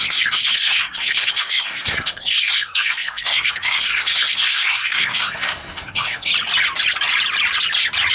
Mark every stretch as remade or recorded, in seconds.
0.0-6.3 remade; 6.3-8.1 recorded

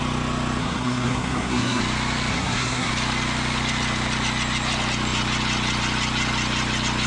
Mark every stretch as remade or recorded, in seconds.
0.0-0.6 recorded; 0.6-1.8 remade; 1.8-2.3 recorded; 2.3-2.9 remade; 2.9-7.1 recorded

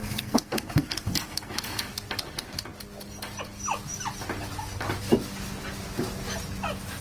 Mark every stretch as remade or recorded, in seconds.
0.0-1.9 remade; 1.9-7.0 recorded

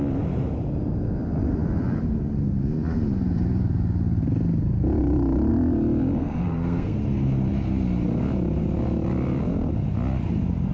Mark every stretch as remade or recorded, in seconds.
0.0-6.2 recorded; 6.2-7.0 remade; 7.0-10.7 recorded